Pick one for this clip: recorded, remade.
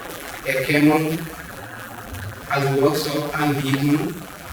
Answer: remade